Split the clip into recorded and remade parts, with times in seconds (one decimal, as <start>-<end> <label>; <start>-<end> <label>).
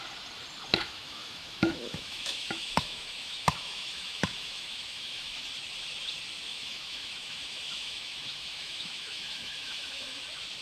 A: 0.0-0.7 recorded; 0.7-5.4 remade; 5.4-6.5 recorded; 6.5-10.2 remade; 10.2-10.6 recorded